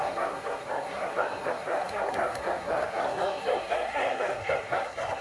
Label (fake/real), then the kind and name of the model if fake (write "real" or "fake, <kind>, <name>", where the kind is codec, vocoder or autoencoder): fake, codec, SNAC